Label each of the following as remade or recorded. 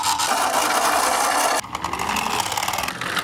recorded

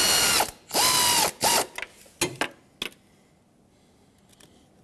recorded